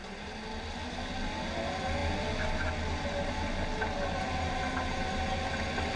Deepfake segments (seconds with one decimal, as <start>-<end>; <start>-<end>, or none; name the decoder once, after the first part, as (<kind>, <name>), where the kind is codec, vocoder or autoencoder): none